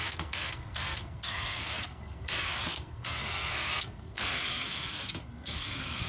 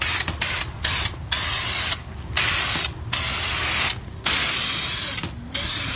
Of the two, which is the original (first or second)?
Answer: second